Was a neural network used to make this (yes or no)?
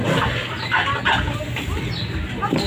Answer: no